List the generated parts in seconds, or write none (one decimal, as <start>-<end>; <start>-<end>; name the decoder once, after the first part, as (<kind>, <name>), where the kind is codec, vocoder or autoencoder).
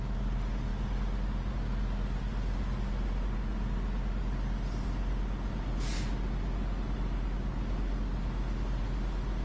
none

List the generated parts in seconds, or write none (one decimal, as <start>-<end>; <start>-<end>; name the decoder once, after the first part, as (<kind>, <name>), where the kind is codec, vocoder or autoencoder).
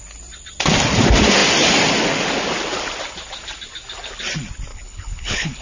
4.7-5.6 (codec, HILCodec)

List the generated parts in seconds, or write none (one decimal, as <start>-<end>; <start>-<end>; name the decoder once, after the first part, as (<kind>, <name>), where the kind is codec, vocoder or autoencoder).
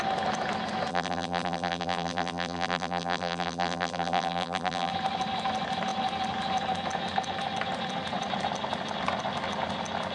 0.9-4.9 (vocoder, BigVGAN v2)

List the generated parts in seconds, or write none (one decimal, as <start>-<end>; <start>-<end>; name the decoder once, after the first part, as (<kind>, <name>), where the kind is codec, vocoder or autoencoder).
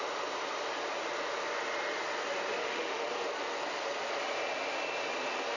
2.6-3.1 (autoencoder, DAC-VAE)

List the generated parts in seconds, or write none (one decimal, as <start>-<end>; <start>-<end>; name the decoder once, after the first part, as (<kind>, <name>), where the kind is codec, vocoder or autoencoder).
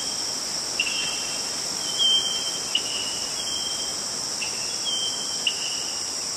none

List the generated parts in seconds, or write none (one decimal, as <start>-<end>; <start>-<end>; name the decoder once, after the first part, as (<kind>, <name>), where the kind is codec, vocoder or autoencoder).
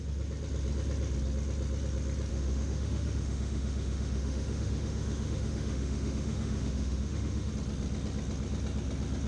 2.3-7.5 (autoencoder, DAC-VAE)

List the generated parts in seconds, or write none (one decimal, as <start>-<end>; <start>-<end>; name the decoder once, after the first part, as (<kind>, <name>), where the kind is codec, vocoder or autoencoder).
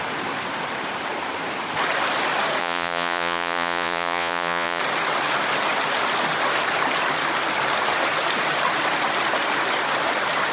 2.6-4.8 (vocoder, Vocos)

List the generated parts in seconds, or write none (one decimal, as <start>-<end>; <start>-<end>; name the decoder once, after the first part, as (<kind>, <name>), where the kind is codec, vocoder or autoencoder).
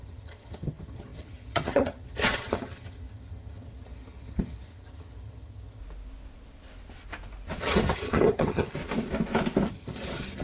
0.0-5.8 (vocoder, HiFi-GAN); 7.6-8.8; 9.7-10.4